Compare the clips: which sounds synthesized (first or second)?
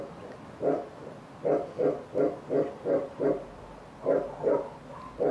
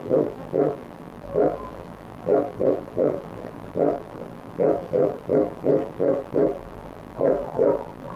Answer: second